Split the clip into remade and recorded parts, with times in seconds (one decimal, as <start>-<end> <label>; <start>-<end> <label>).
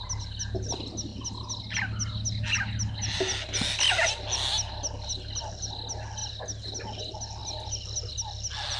0.0-8.8 recorded